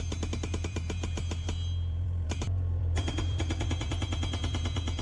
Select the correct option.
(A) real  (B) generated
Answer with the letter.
B